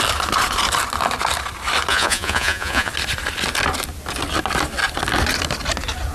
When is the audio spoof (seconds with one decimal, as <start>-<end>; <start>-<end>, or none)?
1.9-2.9